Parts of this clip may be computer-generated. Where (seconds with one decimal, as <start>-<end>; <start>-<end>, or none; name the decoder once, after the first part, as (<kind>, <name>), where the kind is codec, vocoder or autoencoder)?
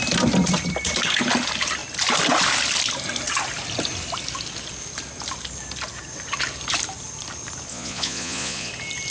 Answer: 7.7-8.7 (vocoder, Vocos)